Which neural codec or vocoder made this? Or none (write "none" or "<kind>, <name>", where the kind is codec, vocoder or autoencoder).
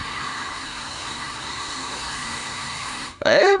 codec, SNAC